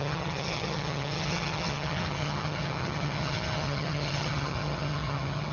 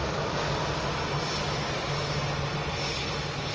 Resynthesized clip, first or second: first